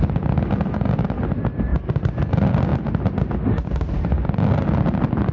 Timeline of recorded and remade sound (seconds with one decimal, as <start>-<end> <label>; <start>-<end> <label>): 0.0-5.3 recorded